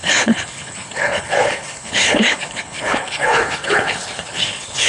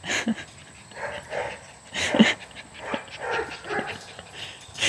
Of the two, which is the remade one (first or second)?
first